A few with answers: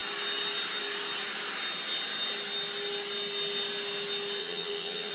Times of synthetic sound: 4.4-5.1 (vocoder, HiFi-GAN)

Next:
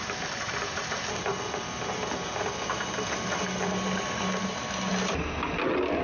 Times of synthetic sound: none

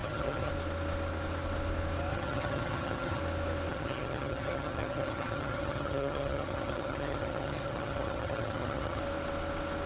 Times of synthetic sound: 0.0-0.5 (vocoder, HiFi-GAN); 2.1-3.2; 3.7-9.0

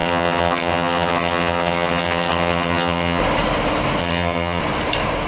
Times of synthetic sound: 0.0-3.2 (vocoder, HiFi-GAN); 4.0-4.6

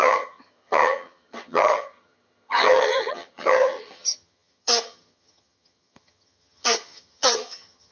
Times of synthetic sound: 0.0-7.9 (vocoder, HiFi-GAN)

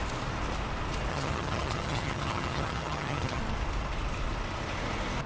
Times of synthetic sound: 1.1-3.4 (vocoder, HiFi-GAN)